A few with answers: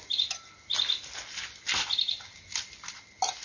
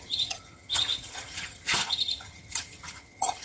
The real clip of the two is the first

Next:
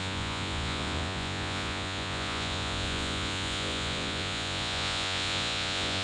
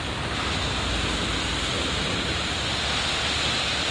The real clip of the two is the second